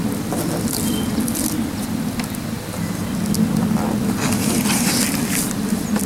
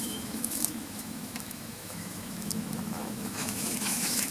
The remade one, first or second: second